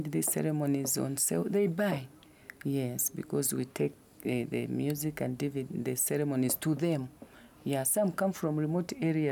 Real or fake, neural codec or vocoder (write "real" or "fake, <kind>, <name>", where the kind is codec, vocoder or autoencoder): real